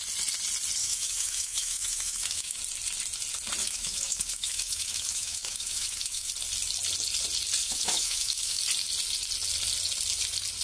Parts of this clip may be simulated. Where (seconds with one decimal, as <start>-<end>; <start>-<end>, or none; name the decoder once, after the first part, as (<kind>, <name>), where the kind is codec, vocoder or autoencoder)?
0.8-2.6 (autoencoder, DAC-VAE); 3.6-6.3; 7.6-8.6